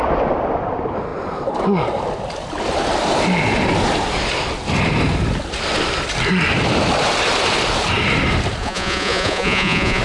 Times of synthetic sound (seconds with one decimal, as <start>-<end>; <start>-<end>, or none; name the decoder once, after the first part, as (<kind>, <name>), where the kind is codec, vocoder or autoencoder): 8.6-10.0 (vocoder, Vocos)